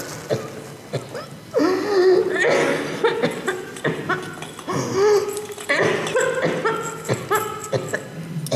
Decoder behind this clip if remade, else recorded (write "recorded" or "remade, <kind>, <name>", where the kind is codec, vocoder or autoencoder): recorded